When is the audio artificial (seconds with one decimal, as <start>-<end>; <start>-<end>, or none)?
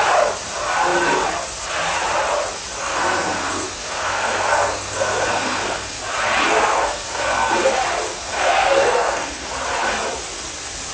2.8-6.0; 6.5-7.5; 8.1-9.5